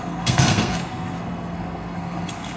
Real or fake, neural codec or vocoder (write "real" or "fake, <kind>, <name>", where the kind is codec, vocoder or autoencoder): fake, codec, SNAC